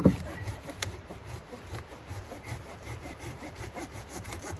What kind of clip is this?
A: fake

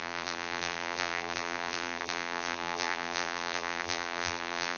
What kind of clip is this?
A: fake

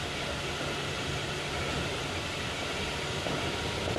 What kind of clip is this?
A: real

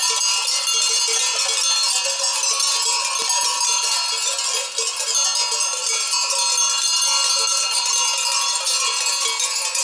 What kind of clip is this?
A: real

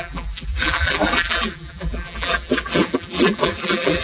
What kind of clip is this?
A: fake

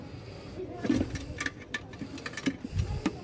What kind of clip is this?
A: real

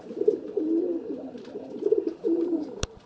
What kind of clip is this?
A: fake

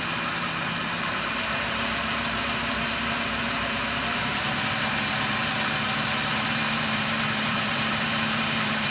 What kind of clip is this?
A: fake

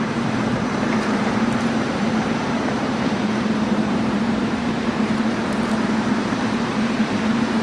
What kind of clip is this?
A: fake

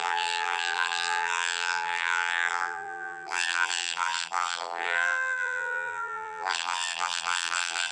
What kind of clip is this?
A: fake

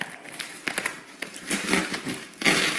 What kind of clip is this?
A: fake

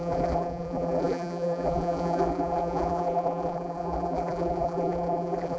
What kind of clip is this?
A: fake